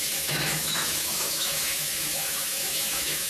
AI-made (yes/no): yes